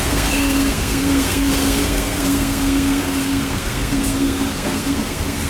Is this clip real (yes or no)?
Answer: no